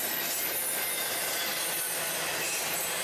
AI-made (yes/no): no